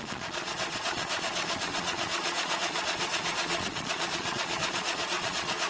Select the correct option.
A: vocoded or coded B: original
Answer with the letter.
A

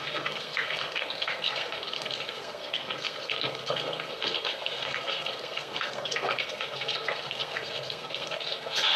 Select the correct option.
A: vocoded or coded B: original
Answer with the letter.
A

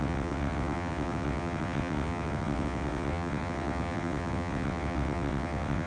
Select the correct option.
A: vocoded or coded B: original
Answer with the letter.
A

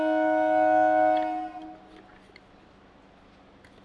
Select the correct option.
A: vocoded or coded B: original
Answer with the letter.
B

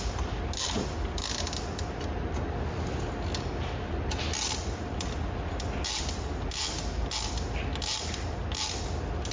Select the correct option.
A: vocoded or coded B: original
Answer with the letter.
B